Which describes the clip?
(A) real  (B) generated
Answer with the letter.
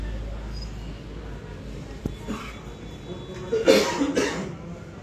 A